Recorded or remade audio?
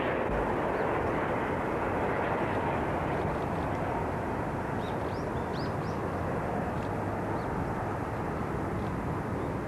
recorded